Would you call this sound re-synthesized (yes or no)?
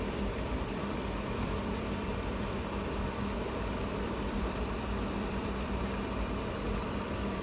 yes